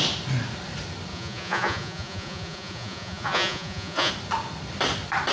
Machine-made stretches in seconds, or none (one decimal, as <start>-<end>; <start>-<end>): 1.1-4.1